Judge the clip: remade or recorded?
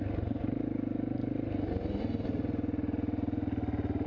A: recorded